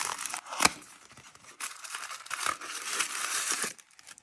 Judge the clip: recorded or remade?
remade